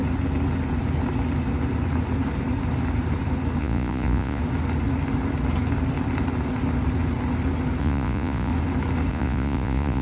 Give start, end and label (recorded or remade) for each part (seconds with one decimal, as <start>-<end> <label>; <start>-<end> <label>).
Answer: 0.0-3.6 recorded; 3.6-4.4 remade; 4.4-7.8 recorded; 7.8-8.5 remade; 8.5-9.1 recorded; 9.1-10.0 remade